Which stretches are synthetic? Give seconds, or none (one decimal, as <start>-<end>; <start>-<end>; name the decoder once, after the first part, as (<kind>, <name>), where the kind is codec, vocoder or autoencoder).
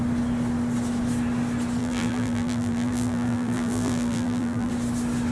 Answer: 1.8-4.7 (vocoder, BigVGAN v2)